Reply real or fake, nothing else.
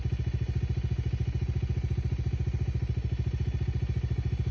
real